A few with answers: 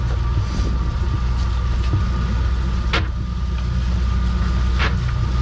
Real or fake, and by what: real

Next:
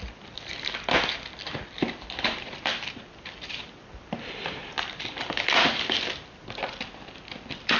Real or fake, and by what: fake, vocoder, BigVGAN v2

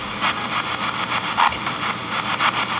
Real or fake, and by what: real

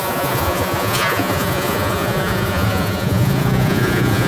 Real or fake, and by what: fake, vocoder, Vocos